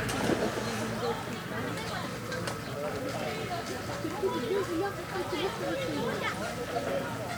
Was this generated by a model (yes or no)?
no